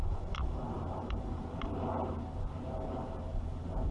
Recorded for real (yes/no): no